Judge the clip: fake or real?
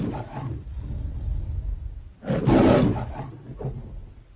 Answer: real